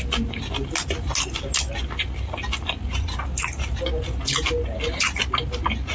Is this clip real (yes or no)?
yes